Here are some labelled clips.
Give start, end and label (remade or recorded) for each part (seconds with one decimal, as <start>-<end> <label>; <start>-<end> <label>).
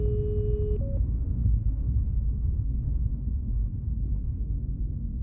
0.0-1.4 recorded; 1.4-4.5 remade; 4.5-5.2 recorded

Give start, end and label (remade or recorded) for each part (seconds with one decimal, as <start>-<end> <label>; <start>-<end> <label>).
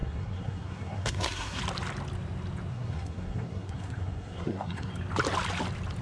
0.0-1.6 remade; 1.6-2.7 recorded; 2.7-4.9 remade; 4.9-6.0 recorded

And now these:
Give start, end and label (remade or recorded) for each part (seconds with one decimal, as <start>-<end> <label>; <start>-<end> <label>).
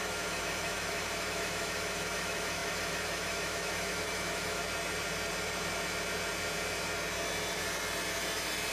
0.0-4.6 remade; 4.6-8.7 recorded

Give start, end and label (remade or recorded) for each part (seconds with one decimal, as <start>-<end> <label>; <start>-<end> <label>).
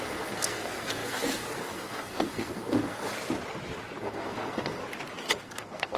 0.0-3.1 remade; 3.1-4.0 recorded; 4.0-4.8 remade; 4.8-5.4 recorded; 5.4-6.0 remade